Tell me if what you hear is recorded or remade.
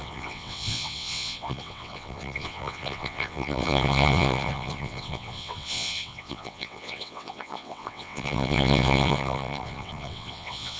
remade